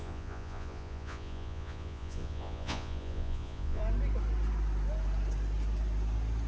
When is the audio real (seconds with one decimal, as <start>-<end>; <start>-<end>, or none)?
3.8-6.5